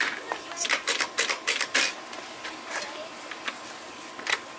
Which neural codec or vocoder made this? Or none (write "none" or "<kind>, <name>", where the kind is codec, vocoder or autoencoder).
none